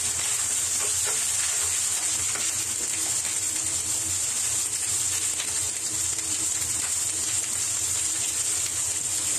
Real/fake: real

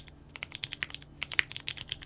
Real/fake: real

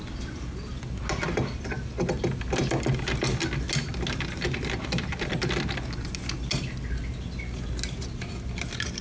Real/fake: real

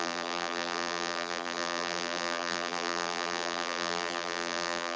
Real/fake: fake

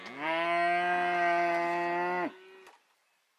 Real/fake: real